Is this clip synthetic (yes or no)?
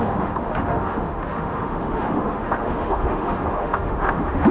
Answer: yes